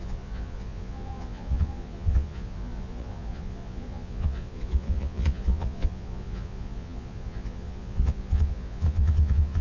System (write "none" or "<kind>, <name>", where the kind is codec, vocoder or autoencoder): vocoder, Vocos